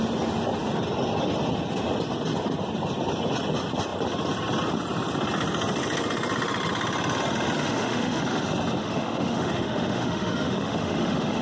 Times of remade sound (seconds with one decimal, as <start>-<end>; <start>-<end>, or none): 7.6-8.2; 8.8-11.4